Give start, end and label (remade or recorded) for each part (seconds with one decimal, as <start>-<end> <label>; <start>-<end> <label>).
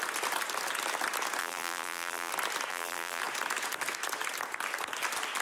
0.0-1.4 recorded; 1.4-2.3 remade; 2.3-2.7 recorded; 2.7-3.2 remade; 3.2-5.4 recorded